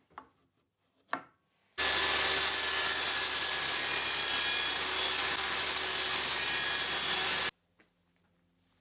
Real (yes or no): yes